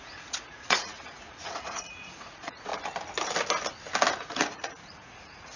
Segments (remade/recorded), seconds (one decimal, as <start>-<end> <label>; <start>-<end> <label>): 0.0-2.7 remade; 2.7-4.2 recorded; 4.2-5.6 remade